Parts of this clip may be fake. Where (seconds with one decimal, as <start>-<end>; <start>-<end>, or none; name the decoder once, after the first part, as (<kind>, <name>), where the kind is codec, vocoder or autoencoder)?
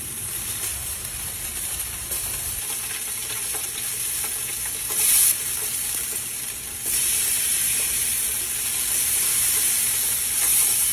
0.0-9.6 (vocoder, BigVGAN v2); 10.2-10.9